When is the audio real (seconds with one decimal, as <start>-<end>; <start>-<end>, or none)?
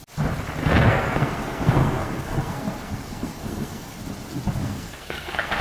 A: 0.0-0.6; 4.0-4.6